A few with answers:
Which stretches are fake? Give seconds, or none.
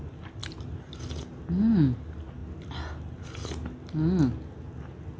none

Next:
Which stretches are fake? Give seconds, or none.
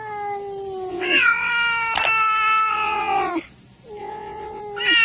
0.9-1.5 (vocoder, WaveNeXt); 2.7-3.3; 4.0-4.6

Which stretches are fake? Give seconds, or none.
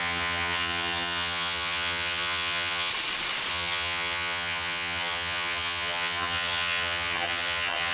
0.0-2.9 (vocoder, HiFi-GAN); 3.5-7.9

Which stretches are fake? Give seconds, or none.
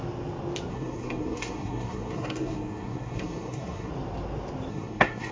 0.7-3.9 (codec, SNAC); 4.7-5.3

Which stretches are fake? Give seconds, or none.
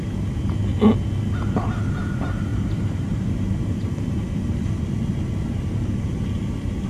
2.5-3.8 (vocoder, BigVGAN v2)